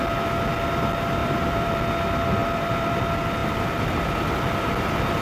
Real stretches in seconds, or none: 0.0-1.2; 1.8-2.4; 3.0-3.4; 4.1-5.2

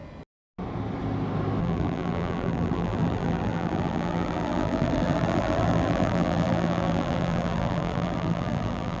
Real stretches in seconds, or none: 0.0-1.6

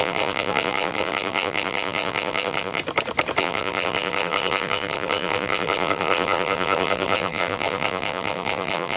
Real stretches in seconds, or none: 2.8-3.4

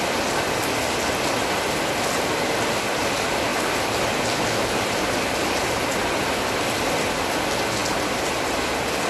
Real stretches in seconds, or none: 0.0-9.1

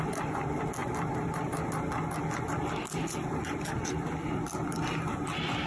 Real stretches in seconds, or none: 0.0-5.7

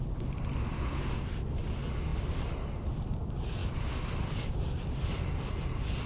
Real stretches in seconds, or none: 0.0-2.1; 2.8-6.1